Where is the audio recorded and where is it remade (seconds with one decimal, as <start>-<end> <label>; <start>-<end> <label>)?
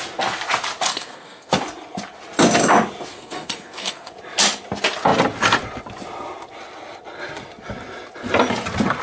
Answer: 0.0-0.9 recorded; 0.9-1.5 remade; 1.5-3.1 recorded; 3.1-4.1 remade; 4.1-9.0 recorded